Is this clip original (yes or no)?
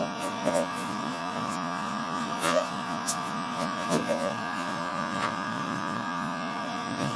no